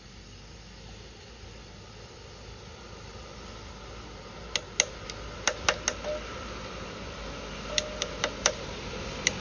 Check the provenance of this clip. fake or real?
real